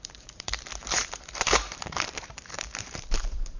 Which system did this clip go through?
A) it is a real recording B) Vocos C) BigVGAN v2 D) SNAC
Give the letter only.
C